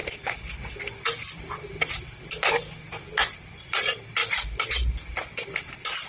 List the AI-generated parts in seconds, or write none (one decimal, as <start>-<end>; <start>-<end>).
none